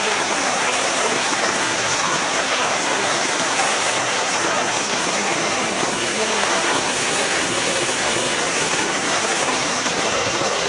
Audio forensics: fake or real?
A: fake